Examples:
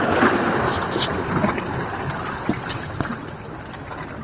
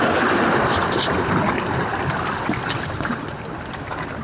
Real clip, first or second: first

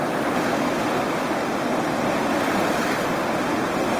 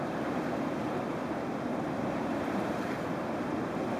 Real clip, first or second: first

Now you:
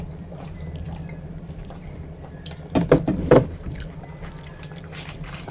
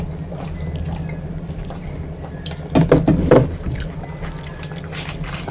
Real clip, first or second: second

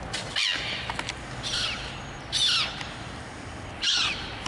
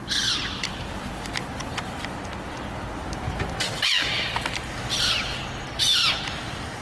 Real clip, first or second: first